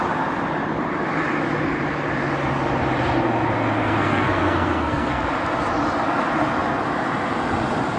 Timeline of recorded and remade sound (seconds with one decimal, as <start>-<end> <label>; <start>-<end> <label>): 0.0-3.8 recorded; 3.8-5.3 remade; 5.3-8.0 recorded